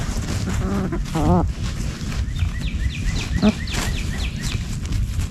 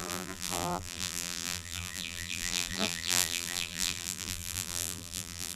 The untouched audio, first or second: first